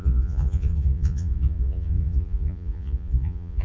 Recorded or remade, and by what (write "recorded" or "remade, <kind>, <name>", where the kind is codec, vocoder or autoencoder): remade, vocoder, Vocos